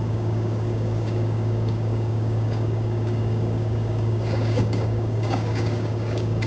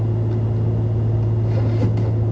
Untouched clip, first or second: second